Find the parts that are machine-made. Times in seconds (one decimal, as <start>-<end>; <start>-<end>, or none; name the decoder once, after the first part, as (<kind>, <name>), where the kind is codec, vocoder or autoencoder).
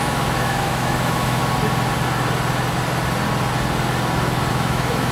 0.0-1.4 (autoencoder, DAC-VAE); 4.5-5.1